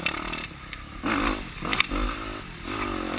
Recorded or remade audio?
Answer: recorded